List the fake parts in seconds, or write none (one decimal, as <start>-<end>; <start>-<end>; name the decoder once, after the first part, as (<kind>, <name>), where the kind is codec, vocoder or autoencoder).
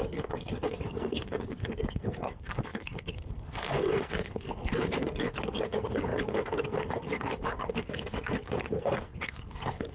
0.0-9.9 (codec, SNAC)